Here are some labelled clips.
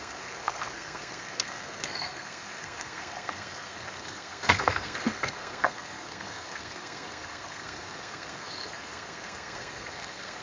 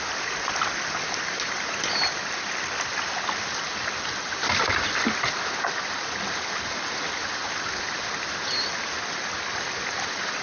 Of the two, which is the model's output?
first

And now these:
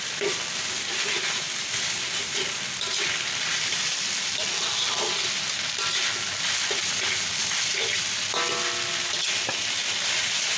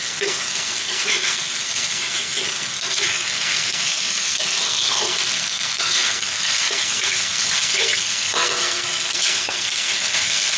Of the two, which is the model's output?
second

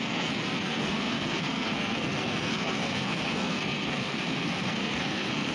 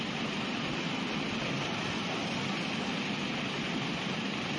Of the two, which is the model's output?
first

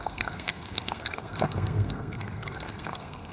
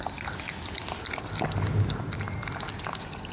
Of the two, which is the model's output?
first